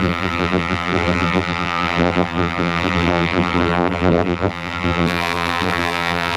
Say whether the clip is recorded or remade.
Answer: remade